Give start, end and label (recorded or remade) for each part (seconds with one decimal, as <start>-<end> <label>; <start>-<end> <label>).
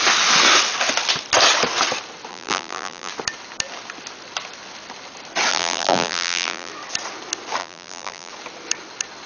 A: 0.0-2.3 recorded; 2.3-3.1 remade; 3.1-5.5 recorded; 5.5-6.7 remade; 6.7-7.6 recorded; 7.6-8.3 remade; 8.3-9.3 recorded